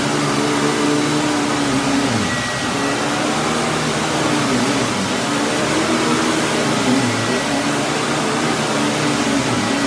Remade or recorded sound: recorded